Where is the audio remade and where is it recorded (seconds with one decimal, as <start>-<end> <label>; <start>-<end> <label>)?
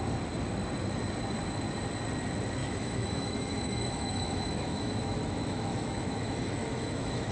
0.0-2.6 recorded; 2.6-7.3 remade